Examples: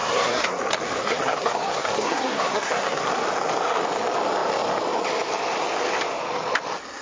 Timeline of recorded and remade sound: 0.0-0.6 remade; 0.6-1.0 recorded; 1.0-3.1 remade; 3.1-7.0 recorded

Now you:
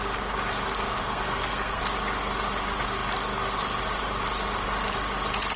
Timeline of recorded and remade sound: 0.0-1.0 recorded; 1.0-1.8 remade; 1.8-5.6 recorded

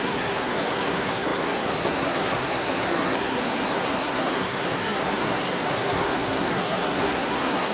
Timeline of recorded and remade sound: 0.0-7.7 remade